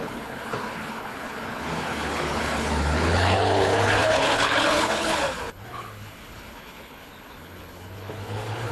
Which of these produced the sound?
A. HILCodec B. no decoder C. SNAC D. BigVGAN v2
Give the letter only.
A